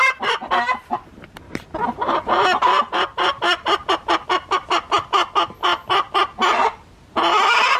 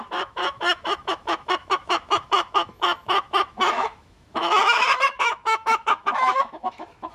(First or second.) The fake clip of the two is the second